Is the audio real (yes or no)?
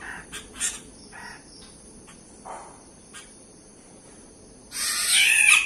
no